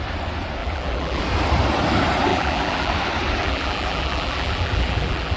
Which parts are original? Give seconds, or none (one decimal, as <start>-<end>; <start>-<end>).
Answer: 0.0-0.6; 1.2-2.3; 2.9-3.4